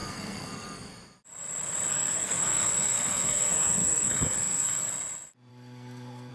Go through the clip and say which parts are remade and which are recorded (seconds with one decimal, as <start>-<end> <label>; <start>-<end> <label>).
0.0-0.9 remade; 0.9-1.9 recorded; 1.9-4.9 remade; 4.9-5.5 recorded; 5.5-6.3 remade